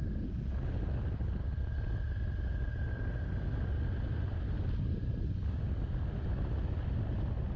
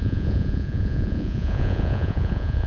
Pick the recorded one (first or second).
first